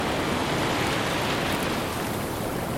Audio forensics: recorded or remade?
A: recorded